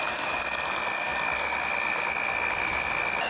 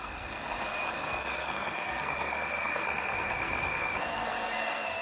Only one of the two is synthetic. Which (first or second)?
second